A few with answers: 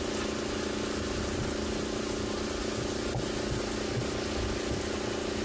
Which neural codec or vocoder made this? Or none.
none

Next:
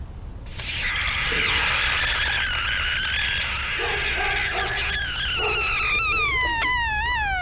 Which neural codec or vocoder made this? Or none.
none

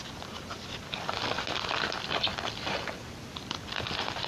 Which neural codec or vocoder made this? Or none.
none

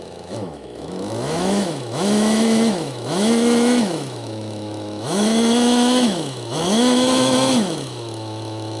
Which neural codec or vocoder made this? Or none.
autoencoder, DAC-VAE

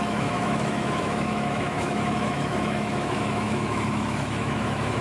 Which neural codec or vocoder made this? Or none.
autoencoder, DAC-VAE